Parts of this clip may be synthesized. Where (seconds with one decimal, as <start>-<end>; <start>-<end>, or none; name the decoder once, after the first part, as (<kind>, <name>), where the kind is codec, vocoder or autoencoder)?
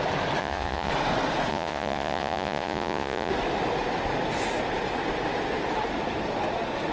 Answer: 0.4-0.9 (vocoder, Vocos); 1.5-3.3